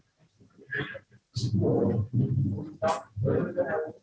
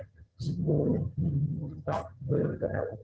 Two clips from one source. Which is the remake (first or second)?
second